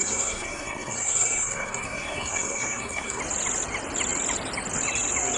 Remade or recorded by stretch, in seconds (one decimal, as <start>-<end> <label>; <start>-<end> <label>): 0.0-3.2 remade; 3.2-5.4 recorded